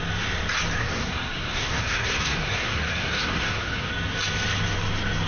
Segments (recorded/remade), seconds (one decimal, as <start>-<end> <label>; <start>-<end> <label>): 0.0-0.8 recorded; 0.8-3.9 remade; 3.9-5.3 recorded